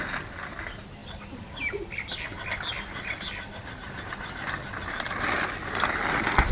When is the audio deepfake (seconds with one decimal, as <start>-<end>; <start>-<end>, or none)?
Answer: none